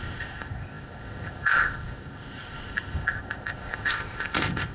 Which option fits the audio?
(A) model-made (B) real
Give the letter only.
A